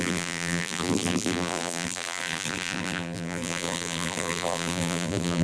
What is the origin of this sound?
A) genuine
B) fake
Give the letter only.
B